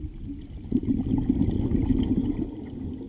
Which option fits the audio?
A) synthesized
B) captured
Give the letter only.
B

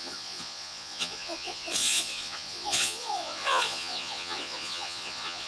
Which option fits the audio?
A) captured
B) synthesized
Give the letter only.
B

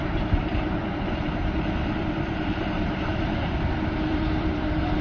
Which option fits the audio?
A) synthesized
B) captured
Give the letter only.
A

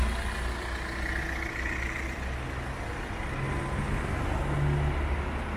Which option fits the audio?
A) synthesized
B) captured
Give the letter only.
B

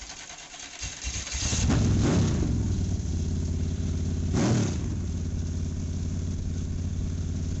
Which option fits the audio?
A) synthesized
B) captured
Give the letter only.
B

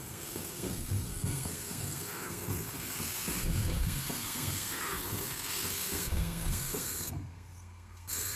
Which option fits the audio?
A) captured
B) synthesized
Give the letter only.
B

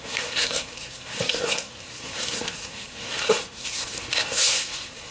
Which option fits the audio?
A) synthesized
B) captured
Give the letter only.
A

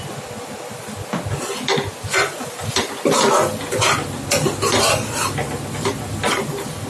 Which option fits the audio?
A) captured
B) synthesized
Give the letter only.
A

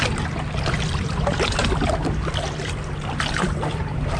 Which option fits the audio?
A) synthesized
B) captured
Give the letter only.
B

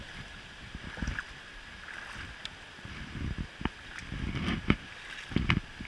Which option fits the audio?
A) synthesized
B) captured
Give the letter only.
B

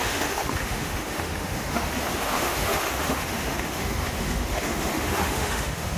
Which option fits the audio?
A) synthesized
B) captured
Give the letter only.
A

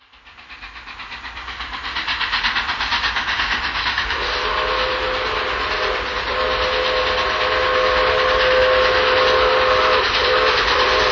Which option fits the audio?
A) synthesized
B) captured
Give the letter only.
B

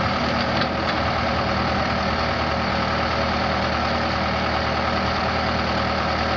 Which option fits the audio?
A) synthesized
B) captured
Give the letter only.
B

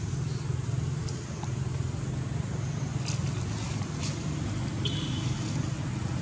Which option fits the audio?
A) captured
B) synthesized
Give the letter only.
A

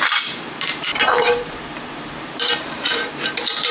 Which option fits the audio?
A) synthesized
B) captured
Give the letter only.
A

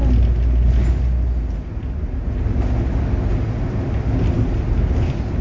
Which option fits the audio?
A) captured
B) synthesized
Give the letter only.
A